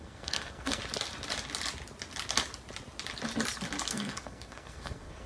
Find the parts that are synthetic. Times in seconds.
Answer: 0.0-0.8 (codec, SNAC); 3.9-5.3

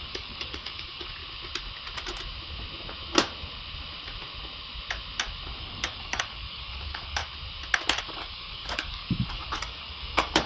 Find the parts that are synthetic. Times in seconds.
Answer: 0.0-1.2 (codec, DAC); 5.6-7.2; 8.0-10.5

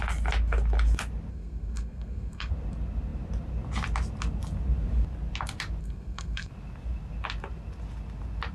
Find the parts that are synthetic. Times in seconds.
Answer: 1.3-2.5 (codec, SNAC); 5.8-6.5

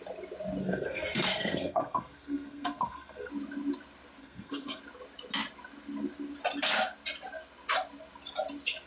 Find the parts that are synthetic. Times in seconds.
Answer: 0.6-3.3 (codec, SNAC); 4.2-4.8

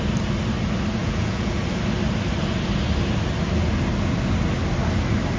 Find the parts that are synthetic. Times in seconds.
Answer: 1.0-1.6 (vocoder, Vocos)

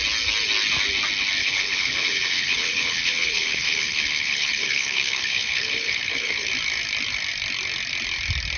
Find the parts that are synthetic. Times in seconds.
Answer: 1.4-6.5 (codec, HILCodec)